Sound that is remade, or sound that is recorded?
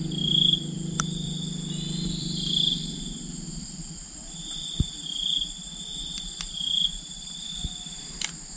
remade